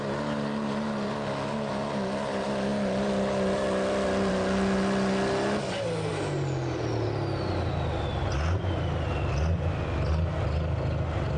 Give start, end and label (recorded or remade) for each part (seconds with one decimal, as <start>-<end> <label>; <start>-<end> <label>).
0.0-11.4 recorded